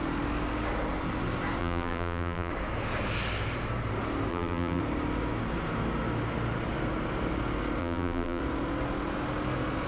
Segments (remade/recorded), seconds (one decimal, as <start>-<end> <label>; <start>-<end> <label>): 0.0-1.6 recorded; 1.6-2.5 remade; 2.5-4.3 recorded; 4.3-4.8 remade; 4.8-7.8 recorded; 7.8-8.4 remade; 8.4-9.9 recorded